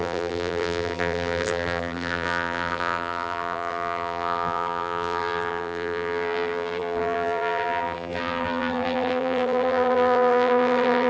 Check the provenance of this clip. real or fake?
fake